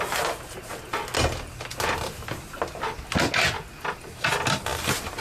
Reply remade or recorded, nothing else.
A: recorded